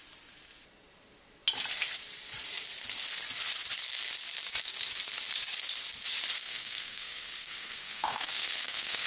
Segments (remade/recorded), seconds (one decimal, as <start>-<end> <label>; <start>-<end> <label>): 0.0-6.4 recorded; 6.4-9.1 remade